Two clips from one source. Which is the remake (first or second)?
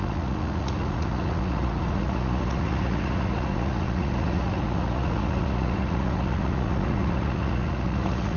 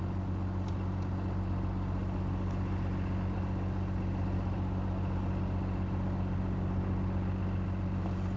first